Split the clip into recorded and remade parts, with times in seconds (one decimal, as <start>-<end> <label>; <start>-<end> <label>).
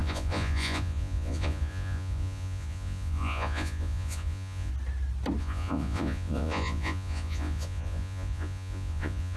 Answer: 0.0-4.7 remade; 4.7-5.4 recorded; 5.4-9.4 remade